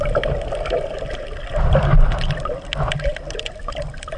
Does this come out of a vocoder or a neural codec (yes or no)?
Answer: no